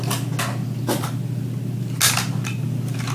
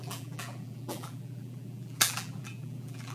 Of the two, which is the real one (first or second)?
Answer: first